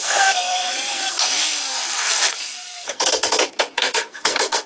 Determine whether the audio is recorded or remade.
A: remade